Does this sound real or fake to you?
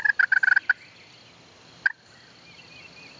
real